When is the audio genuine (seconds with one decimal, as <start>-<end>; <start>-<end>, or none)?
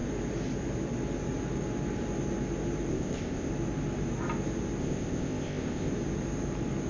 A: 0.0-2.9; 3.5-4.8; 5.9-6.9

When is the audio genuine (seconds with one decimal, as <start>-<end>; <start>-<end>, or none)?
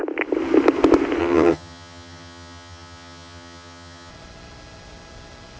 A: 0.0-1.2; 4.1-5.6